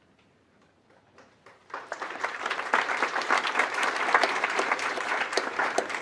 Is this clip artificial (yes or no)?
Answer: yes